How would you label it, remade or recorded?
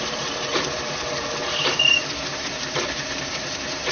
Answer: remade